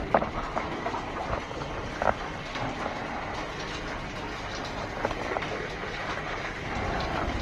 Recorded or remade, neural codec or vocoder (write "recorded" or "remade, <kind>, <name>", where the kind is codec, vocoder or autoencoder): recorded